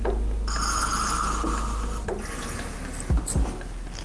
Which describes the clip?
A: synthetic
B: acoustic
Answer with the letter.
B